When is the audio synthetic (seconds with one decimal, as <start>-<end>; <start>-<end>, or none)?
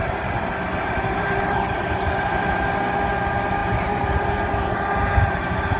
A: 0.7-2.8; 3.6-5.8